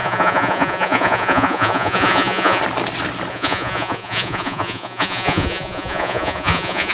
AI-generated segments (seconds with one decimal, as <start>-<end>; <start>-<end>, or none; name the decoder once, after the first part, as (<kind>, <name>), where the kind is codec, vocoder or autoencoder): 0.0-2.6 (vocoder, Vocos); 3.3-6.9